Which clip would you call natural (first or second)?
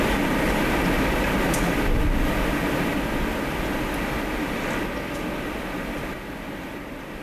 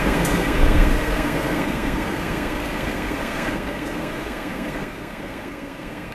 first